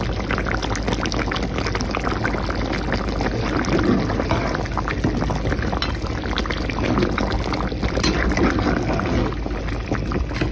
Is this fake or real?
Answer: real